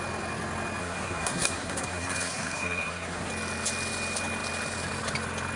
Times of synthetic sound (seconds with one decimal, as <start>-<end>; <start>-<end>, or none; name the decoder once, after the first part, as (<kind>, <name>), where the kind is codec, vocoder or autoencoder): 0.8-3.3 (codec, SNAC)